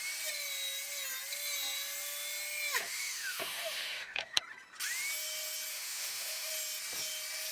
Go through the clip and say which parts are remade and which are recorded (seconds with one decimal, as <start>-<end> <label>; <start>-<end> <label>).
0.0-2.7 recorded; 2.7-4.4 remade; 4.4-5.7 recorded; 5.7-6.5 remade; 6.5-7.5 recorded